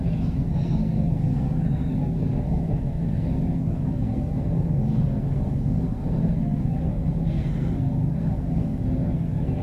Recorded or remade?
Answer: remade